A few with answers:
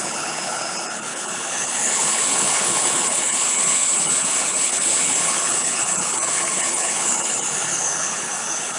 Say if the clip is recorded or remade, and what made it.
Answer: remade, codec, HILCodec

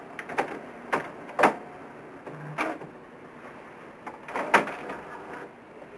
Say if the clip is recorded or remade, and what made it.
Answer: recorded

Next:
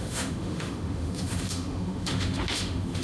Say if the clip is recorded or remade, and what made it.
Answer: remade, autoencoder, DAC-VAE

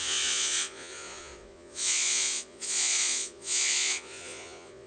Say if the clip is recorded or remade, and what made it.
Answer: remade, vocoder, Vocos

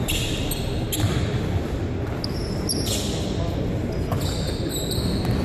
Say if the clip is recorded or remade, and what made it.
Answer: recorded